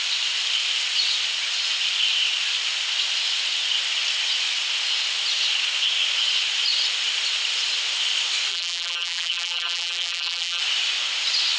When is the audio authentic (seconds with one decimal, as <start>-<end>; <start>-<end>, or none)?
0.0-8.5; 10.6-11.6